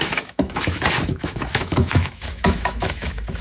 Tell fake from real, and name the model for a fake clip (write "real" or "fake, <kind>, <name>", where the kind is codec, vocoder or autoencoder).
fake, autoencoder, DAC-VAE